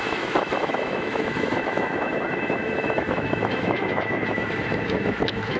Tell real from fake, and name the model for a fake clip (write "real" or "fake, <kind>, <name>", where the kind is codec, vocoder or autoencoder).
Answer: fake, autoencoder, DAC-VAE